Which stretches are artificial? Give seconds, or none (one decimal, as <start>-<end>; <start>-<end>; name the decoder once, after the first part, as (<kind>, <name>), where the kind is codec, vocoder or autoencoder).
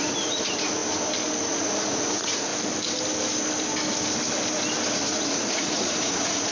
0.0-0.8 (vocoder, Vocos); 1.4-2.5; 4.9-6.5